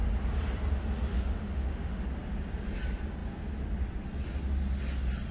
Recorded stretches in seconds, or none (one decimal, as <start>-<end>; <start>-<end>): 0.0-1.1; 2.0-5.3